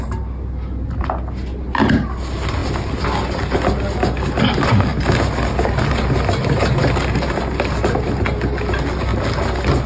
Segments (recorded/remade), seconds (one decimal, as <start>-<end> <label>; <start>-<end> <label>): 0.0-9.9 recorded